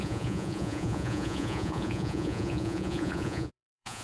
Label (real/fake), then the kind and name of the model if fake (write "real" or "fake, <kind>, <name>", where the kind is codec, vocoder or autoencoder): fake, vocoder, Vocos